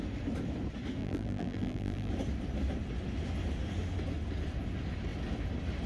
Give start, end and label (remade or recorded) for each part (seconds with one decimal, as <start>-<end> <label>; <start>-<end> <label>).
0.0-1.0 recorded; 1.0-2.1 remade; 2.1-5.9 recorded